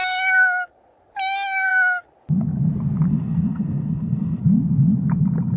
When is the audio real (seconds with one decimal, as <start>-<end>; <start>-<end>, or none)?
0.0-3.1; 4.4-5.6